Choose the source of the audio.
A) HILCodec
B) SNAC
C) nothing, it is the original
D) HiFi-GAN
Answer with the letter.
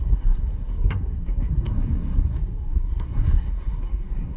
B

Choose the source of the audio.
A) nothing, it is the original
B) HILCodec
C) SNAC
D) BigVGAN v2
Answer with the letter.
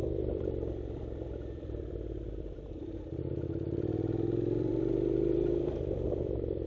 D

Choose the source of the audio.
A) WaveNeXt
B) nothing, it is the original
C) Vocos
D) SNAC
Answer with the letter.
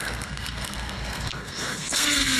D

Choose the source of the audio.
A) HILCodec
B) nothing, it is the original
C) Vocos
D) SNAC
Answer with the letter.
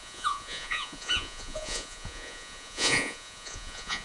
C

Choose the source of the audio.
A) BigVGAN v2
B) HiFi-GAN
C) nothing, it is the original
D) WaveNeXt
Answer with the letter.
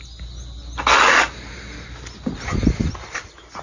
C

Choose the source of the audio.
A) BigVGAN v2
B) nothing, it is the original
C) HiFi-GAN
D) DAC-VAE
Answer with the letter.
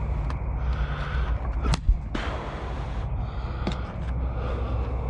B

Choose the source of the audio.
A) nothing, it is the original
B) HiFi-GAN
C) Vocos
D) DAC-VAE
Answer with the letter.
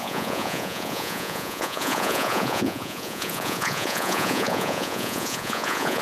C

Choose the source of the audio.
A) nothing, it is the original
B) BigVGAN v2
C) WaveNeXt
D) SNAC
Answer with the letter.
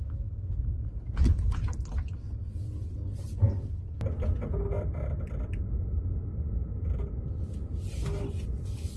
A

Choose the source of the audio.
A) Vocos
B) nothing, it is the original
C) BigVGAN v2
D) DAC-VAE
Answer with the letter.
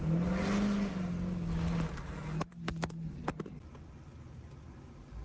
B